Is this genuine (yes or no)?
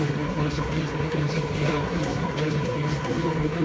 no